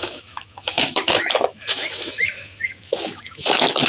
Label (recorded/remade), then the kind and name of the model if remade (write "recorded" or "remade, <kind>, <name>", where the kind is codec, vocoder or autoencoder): remade, autoencoder, DAC-VAE